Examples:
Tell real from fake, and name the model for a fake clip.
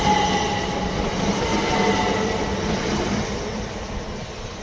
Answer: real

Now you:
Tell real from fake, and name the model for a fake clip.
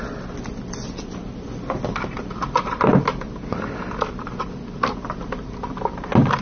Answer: real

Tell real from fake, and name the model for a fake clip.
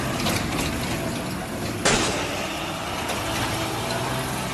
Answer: real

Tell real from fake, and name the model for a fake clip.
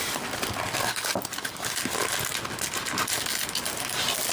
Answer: real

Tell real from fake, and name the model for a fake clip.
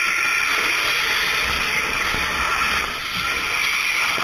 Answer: real